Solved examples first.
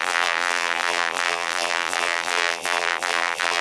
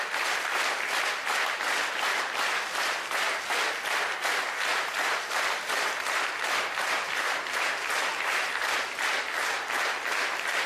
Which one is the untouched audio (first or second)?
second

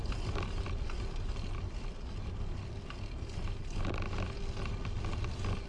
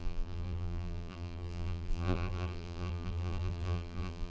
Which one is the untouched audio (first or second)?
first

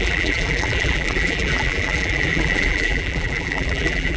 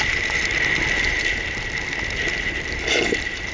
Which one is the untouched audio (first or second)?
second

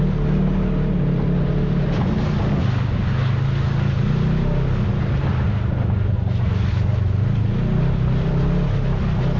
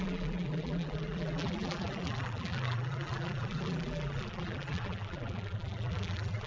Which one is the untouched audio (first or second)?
first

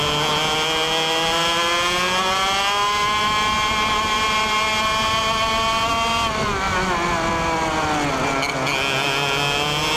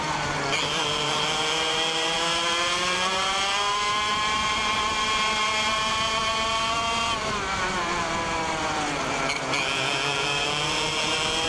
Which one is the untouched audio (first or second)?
first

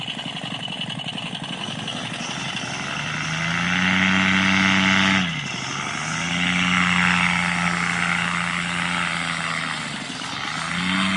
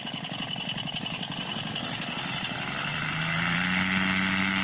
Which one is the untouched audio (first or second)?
first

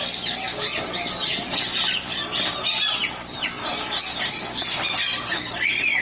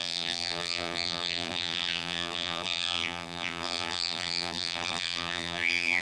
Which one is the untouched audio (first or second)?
first